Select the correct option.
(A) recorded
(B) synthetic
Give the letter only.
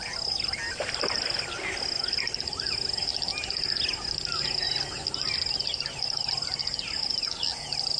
A